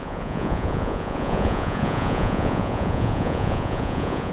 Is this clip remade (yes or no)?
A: yes